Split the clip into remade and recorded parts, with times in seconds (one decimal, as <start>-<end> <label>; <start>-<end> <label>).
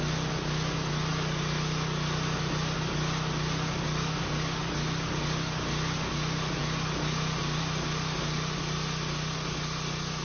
0.0-10.2 recorded